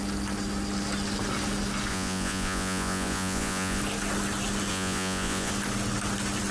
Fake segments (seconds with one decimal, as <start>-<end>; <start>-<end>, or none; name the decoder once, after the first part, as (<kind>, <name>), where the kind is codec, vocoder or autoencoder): 1.9-3.8 (vocoder, Vocos); 4.7-5.5